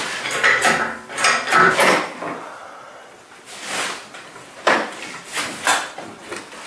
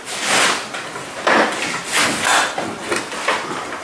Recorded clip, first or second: second